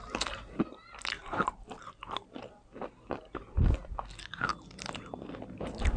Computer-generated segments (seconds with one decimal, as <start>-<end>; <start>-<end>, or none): 1.2-3.0; 4.5-5.3